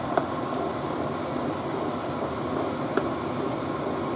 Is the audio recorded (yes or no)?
yes